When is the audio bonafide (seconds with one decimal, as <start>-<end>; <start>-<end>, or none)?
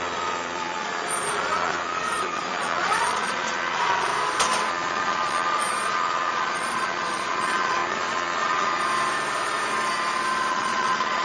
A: 4.1-4.7; 8.8-10.5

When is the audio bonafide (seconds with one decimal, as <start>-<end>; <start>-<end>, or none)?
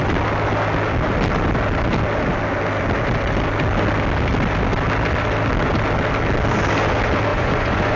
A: 0.0-7.3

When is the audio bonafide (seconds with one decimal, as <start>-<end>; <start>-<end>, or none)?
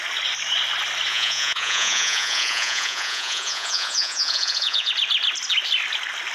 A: 0.0-1.1; 4.9-6.3